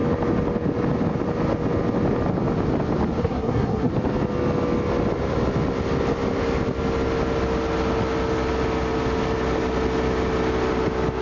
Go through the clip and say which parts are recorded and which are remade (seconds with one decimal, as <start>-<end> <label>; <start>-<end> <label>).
0.0-3.2 recorded; 3.2-3.9 remade; 3.9-11.2 recorded